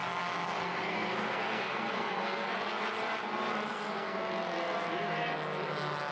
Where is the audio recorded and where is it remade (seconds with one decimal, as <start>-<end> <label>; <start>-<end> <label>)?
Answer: 0.0-2.7 remade; 2.7-3.7 recorded; 3.7-4.2 remade; 4.2-6.1 recorded